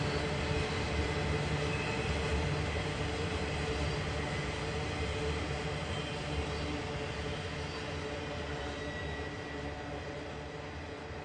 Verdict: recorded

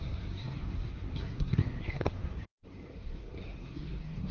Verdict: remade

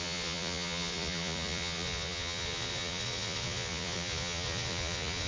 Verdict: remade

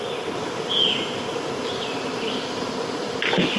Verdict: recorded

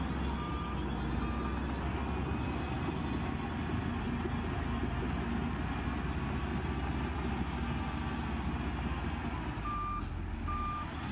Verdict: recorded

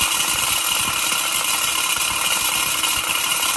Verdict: recorded